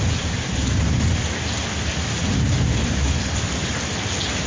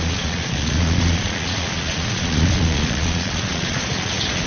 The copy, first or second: second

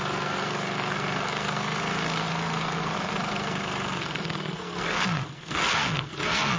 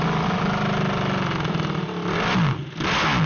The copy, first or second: first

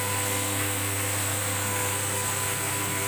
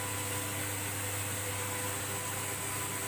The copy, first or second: first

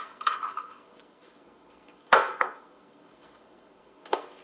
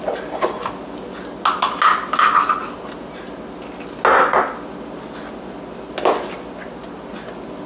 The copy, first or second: first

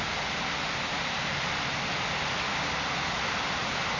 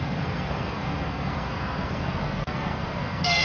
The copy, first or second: second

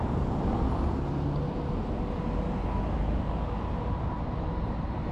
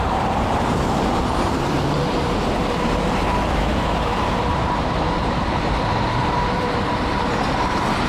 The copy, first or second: second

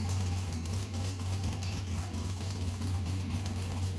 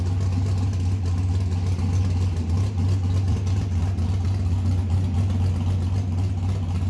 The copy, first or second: first